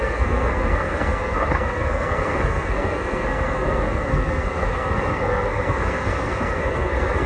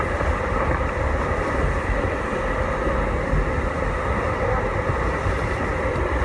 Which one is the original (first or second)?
second